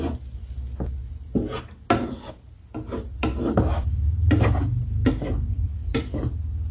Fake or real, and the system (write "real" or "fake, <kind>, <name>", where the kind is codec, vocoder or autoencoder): real